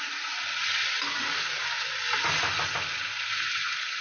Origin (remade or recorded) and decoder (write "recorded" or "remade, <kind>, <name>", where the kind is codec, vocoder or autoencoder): recorded